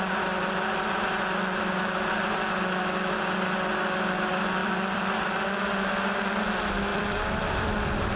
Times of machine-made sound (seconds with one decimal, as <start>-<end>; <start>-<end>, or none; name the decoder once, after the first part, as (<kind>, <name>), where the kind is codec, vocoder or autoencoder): 4.6-5.1 (vocoder, BigVGAN v2); 6.9-8.2